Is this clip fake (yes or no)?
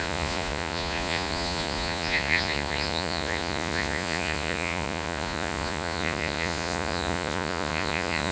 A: yes